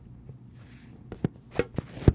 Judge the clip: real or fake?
real